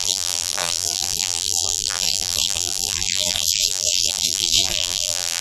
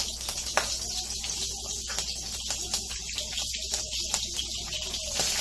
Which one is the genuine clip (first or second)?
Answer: second